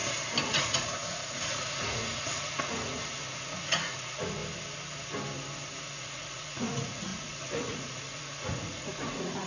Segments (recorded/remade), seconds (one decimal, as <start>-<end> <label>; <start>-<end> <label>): 0.0-0.5 recorded; 0.5-4.4 remade; 4.4-5.8 recorded; 5.8-9.5 remade

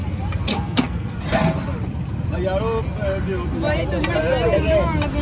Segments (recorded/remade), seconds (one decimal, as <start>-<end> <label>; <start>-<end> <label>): 0.0-0.5 recorded; 0.5-1.2 remade; 1.2-5.2 recorded

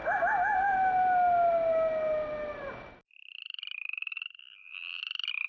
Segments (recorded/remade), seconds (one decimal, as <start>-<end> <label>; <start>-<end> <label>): 0.0-4.4 recorded; 4.4-5.0 remade; 5.0-5.5 recorded

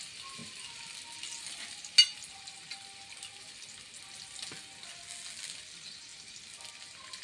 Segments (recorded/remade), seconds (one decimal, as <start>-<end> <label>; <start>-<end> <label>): 0.0-7.2 recorded

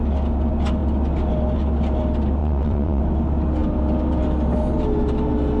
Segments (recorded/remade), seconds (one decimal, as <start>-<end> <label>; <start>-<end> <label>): 0.0-2.4 recorded; 2.4-3.0 remade; 3.0-5.6 recorded